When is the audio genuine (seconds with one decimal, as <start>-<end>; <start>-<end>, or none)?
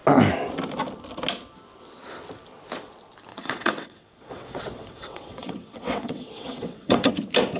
0.0-3.3; 7.1-7.6